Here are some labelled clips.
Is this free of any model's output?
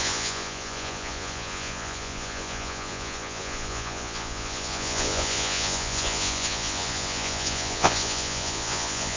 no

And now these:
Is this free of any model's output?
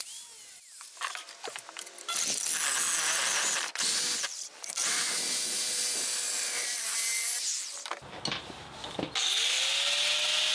yes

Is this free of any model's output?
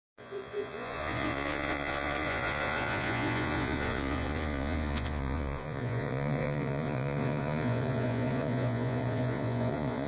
no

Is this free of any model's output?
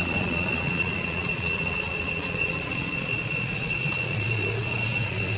no